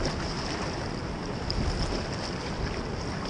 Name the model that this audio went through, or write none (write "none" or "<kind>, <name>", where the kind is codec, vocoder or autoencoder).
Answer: none